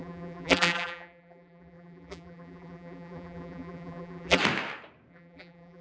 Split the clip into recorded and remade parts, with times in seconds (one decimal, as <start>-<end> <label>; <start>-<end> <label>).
0.0-4.4 remade; 4.4-5.1 recorded; 5.1-5.8 remade